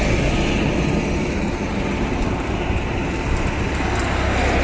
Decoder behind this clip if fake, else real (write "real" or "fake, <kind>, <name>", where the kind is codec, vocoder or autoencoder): real